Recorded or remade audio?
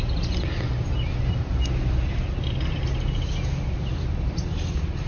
recorded